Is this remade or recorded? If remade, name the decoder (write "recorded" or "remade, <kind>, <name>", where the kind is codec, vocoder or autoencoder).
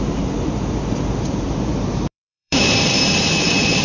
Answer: remade, vocoder, BigVGAN v2